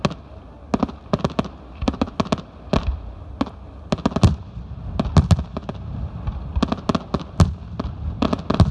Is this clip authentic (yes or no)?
yes